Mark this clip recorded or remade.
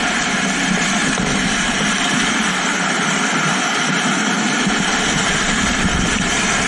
recorded